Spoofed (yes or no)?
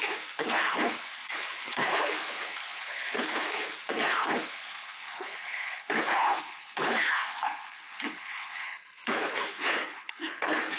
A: yes